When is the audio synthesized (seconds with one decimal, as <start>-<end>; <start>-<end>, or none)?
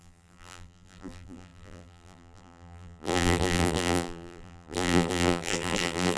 0.0-6.2